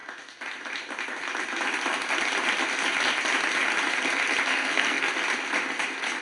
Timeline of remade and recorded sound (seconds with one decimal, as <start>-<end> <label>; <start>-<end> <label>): 0.0-4.5 recorded; 4.5-5.1 remade; 5.1-6.2 recorded